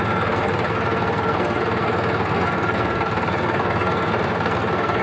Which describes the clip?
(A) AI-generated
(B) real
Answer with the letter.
A